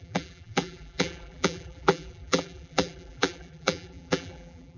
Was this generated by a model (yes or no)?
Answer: yes